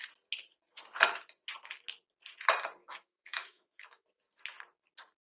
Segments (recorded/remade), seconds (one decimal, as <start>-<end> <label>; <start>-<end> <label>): 0.0-2.8 recorded; 2.8-4.2 remade; 4.2-5.2 recorded